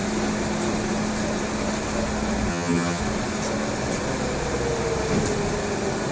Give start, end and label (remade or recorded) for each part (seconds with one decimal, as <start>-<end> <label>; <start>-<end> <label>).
0.0-2.5 recorded; 2.5-3.0 remade; 3.0-6.1 recorded